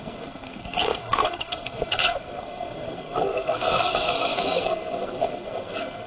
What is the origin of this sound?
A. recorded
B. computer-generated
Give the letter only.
B